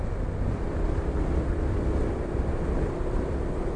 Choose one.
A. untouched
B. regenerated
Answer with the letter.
A